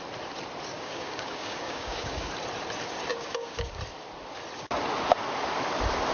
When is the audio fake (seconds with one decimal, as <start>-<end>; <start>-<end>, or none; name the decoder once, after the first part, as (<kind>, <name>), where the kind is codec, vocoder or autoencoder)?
0.7-2.3 (codec, DAC); 3.1-3.8